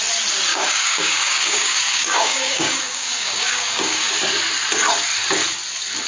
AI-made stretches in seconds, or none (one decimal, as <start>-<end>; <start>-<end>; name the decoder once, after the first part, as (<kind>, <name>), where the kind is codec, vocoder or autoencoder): 0.5-4.2 (codec, DAC)